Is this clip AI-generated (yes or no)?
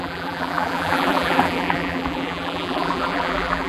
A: yes